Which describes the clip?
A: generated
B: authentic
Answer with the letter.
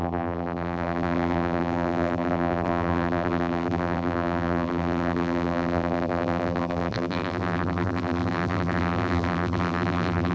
A